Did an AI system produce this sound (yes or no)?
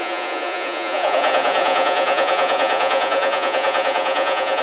yes